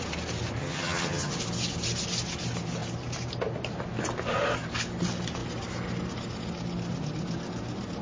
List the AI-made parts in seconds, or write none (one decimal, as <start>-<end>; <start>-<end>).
0.6-1.3